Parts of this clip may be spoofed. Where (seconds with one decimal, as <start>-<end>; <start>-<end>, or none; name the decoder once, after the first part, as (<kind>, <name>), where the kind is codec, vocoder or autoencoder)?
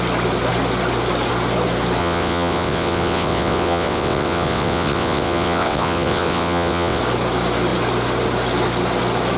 2.0-7.0 (vocoder, WaveNeXt)